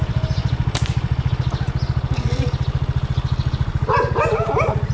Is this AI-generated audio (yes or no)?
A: no